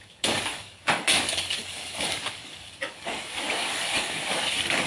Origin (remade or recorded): remade